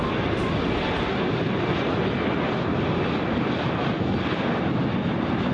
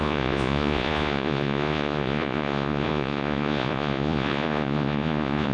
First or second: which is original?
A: first